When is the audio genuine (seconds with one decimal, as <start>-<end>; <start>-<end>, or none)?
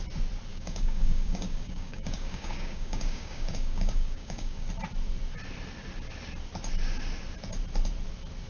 0.0-0.5; 4.7-8.5